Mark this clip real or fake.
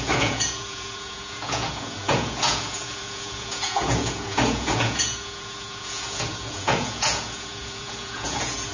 fake